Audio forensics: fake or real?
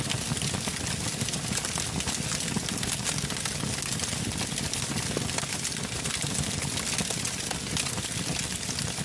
real